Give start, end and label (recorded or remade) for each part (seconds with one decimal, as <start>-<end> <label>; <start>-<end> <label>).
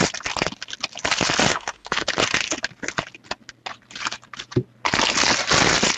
0.0-1.5 recorded; 1.5-2.1 remade; 2.1-6.0 recorded